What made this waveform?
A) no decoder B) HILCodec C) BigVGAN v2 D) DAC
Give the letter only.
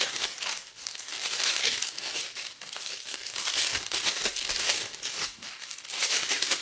D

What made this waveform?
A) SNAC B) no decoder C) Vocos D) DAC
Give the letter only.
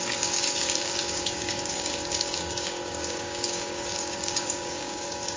D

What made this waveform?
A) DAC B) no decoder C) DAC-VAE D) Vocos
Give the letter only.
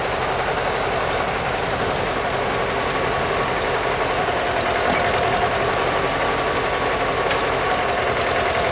B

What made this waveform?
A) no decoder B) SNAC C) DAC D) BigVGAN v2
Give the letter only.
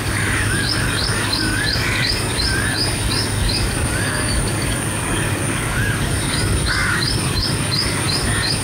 C